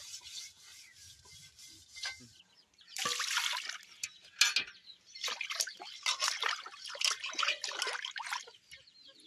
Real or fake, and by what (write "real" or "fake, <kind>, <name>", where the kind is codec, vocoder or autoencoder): real